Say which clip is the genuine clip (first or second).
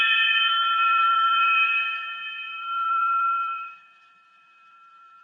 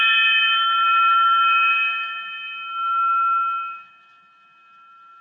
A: second